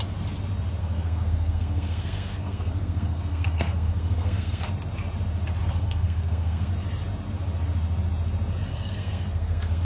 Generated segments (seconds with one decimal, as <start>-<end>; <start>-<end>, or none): 0.8-4.7; 5.6-6.7; 8.7-9.8